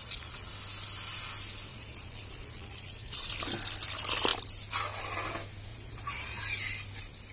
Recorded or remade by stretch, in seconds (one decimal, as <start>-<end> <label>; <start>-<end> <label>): 0.0-0.5 remade; 0.5-1.7 recorded; 1.7-3.3 remade; 3.3-5.7 recorded; 5.7-6.4 remade; 6.4-7.3 recorded